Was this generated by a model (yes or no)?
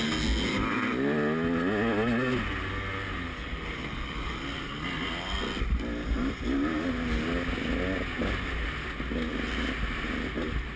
no